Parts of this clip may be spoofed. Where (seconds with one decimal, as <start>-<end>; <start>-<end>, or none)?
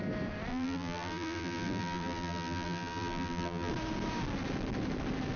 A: 0.5-3.7